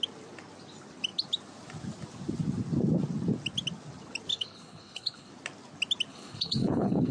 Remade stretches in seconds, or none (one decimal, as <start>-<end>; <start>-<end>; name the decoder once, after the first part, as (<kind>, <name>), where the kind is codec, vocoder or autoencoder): 4.3-5.3 (codec, HILCodec); 6.1-7.1